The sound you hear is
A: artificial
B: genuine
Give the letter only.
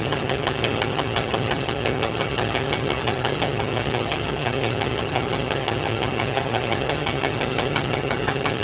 A